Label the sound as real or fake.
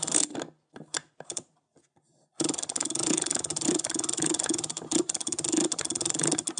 real